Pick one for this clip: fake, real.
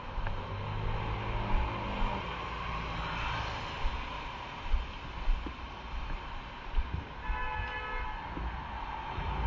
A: real